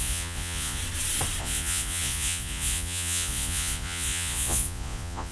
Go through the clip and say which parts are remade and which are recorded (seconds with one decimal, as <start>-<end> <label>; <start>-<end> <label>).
0.0-0.8 remade; 0.8-1.4 recorded; 1.4-5.3 remade